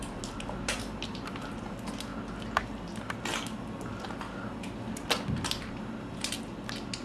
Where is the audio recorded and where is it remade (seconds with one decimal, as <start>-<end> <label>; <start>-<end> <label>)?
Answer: 0.0-7.0 recorded